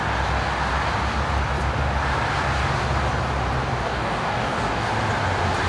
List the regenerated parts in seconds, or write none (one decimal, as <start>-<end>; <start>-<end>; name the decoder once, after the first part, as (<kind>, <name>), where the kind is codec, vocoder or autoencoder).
3.7-4.9 (codec, DAC)